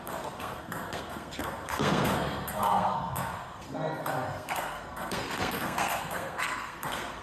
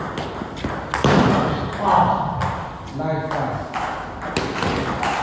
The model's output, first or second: first